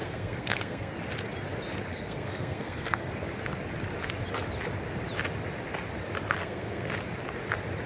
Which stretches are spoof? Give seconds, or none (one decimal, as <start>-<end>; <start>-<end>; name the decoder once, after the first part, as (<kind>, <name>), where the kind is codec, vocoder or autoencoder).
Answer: 0.0-1.0 (codec, SNAC); 1.9-3.1; 6.4-6.9